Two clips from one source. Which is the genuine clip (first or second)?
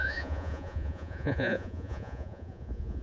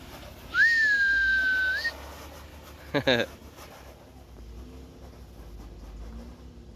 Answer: second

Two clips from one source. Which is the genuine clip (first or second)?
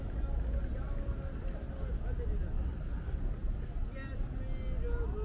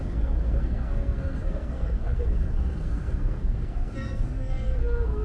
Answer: first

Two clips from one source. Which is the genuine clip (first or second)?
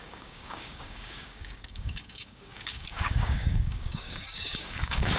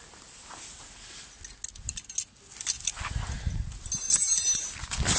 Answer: second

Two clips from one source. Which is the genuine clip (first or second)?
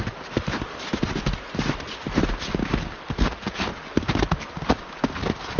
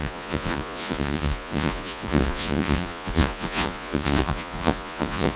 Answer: first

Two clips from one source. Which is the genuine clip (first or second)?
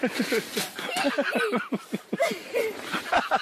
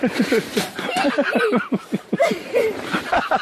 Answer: first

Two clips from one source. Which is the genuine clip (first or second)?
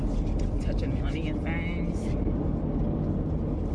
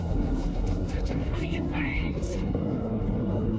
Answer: first